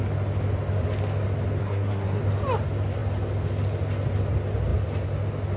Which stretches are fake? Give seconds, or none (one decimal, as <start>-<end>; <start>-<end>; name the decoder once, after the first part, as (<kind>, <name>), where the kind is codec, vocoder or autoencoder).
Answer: 1.6-2.2 (codec, SNAC)